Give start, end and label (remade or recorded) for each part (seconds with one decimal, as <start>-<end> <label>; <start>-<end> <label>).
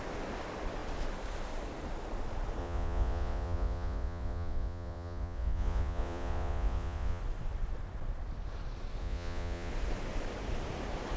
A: 0.0-2.6 recorded; 2.6-7.2 remade; 7.2-9.0 recorded; 9.0-9.7 remade; 9.7-11.2 recorded